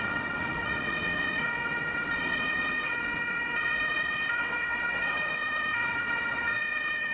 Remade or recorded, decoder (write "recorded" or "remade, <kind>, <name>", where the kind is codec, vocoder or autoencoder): remade, vocoder, WaveNeXt